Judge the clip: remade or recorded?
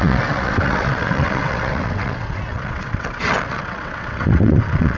remade